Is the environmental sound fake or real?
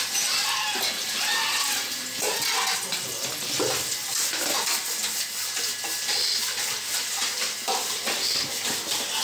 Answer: real